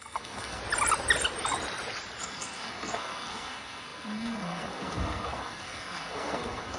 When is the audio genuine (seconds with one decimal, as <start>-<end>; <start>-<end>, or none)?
0.6-2.2